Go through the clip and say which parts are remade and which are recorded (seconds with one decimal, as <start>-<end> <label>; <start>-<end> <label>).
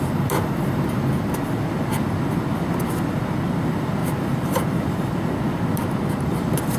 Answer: 0.0-4.0 recorded; 4.0-5.2 remade; 5.2-6.8 recorded